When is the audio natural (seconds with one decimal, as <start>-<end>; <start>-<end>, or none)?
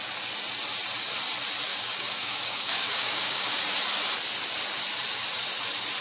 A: 0.0-1.7; 3.6-6.0